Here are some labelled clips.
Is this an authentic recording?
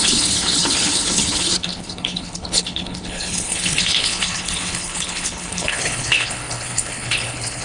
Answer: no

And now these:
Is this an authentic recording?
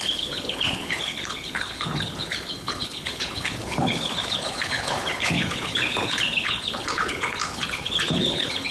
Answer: no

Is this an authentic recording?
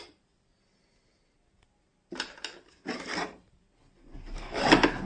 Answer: yes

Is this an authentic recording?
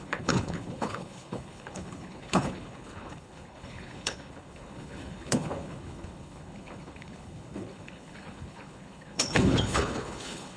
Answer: no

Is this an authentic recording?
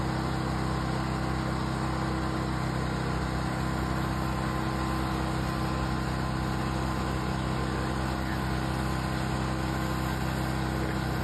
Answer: yes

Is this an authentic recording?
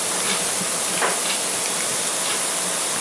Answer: yes